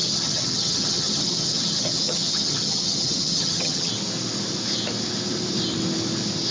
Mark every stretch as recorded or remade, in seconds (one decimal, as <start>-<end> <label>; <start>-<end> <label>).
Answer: 0.0-3.9 remade; 3.9-6.5 recorded